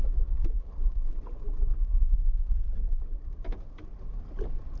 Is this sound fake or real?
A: real